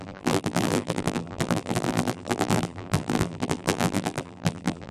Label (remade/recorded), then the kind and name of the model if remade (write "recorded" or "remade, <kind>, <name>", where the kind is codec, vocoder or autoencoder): remade, vocoder, BigVGAN v2